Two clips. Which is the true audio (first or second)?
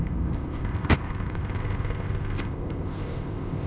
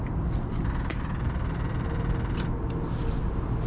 second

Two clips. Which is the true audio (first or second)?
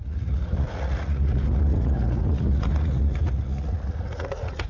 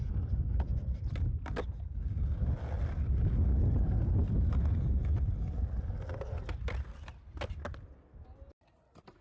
second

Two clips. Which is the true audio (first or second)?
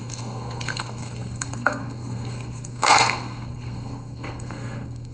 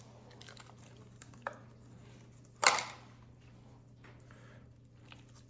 second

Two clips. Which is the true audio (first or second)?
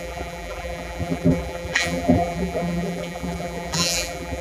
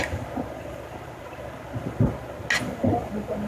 second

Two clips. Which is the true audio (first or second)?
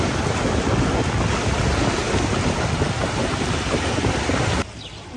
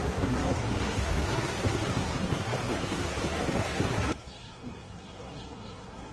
first